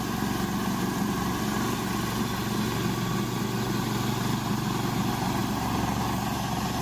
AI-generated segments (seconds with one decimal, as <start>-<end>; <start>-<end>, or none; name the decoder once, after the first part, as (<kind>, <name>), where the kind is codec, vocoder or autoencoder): none